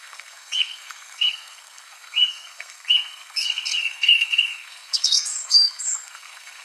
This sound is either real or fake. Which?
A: fake